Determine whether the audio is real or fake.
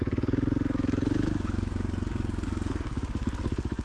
fake